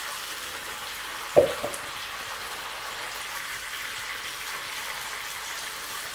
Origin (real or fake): real